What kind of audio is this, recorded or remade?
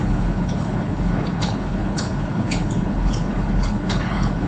remade